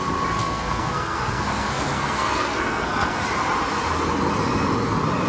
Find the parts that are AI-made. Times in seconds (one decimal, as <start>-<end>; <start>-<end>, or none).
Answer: 0.4-3.2